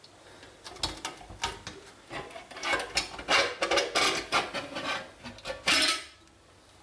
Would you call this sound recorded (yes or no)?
yes